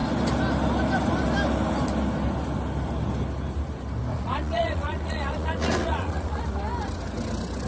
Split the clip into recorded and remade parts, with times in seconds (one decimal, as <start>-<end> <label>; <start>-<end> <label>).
0.0-4.1 recorded; 4.1-6.4 remade; 6.4-7.7 recorded